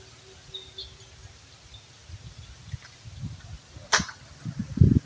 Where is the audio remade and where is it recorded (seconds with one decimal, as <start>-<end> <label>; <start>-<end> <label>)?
0.0-5.0 recorded